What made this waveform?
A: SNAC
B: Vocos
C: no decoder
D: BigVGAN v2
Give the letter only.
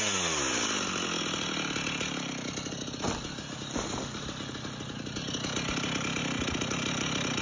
C